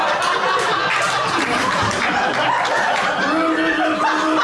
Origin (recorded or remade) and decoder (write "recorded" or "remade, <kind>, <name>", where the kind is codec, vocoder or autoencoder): recorded